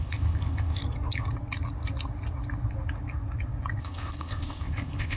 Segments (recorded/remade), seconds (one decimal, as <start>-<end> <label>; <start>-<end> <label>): 0.0-0.8 remade; 0.8-3.8 recorded; 3.8-5.2 remade